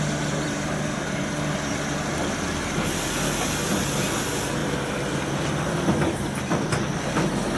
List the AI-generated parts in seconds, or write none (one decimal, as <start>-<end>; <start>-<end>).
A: 4.6-6.2